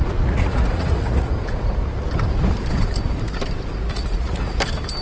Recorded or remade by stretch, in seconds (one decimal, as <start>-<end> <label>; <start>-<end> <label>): 0.0-1.3 remade; 1.3-3.9 recorded; 3.9-4.6 remade; 4.6-5.0 recorded